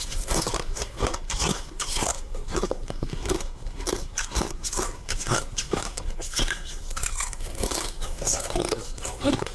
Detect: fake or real fake